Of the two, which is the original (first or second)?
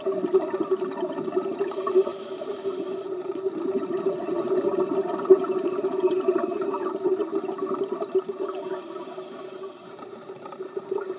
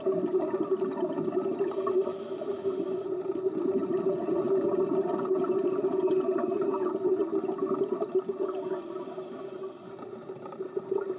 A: second